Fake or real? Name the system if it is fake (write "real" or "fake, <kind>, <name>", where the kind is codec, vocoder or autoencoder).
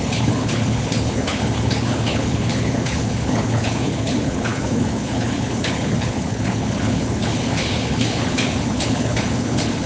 fake, codec, HILCodec